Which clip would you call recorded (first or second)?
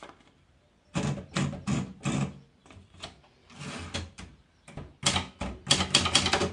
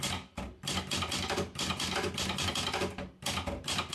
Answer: first